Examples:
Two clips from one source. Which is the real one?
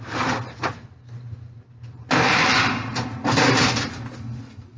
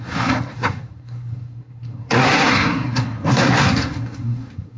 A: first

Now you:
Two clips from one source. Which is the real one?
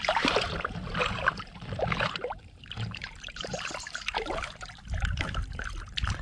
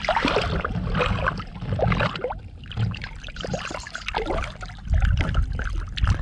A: second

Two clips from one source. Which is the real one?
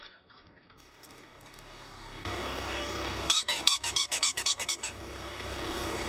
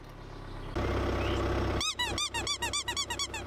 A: second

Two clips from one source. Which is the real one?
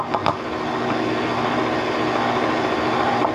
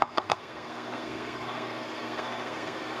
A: first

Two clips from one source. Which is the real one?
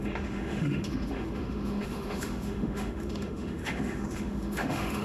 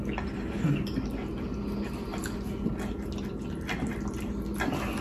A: second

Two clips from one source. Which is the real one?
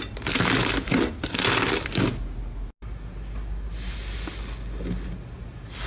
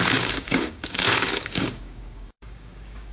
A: first